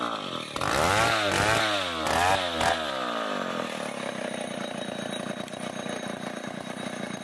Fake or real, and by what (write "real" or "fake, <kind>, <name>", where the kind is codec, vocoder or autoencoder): real